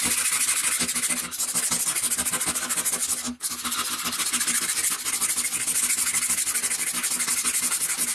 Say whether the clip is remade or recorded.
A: recorded